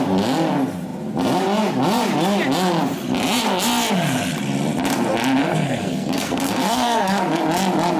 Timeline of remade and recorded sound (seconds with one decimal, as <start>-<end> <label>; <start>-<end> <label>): 0.0-5.4 recorded; 5.4-7.4 remade; 7.4-8.0 recorded